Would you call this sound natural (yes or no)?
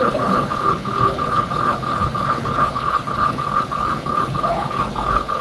no